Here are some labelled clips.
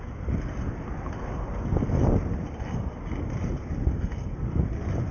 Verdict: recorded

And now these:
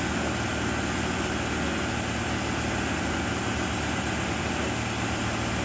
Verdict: recorded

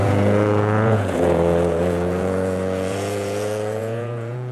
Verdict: remade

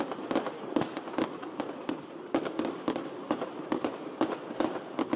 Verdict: recorded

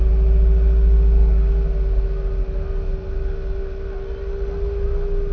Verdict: recorded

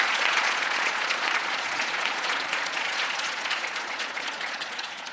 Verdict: remade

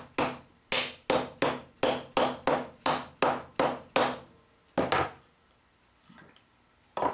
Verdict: recorded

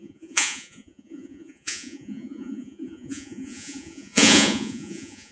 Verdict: remade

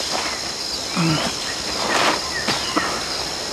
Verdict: recorded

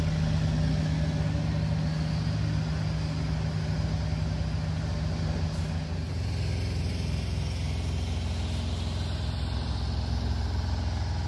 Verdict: recorded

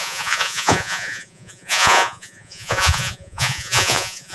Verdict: remade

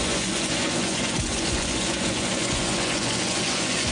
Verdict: remade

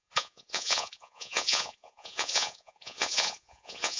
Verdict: remade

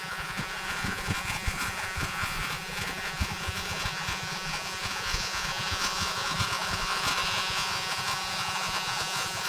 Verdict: remade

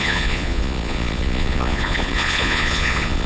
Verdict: remade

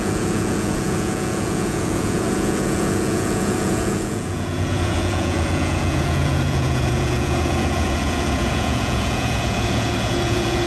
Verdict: remade